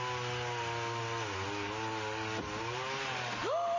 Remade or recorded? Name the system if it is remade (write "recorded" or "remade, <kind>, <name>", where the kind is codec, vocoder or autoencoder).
recorded